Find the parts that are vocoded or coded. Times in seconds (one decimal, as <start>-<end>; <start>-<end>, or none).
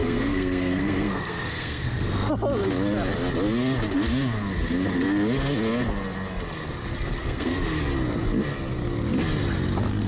0.0-2.3; 7.2-7.8